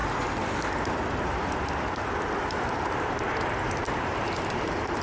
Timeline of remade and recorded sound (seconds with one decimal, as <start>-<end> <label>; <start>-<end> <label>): 0.0-3.0 recorded; 3.0-5.0 remade